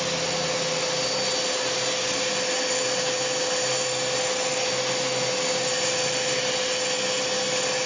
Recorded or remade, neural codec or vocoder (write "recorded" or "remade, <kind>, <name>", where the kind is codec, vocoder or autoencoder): recorded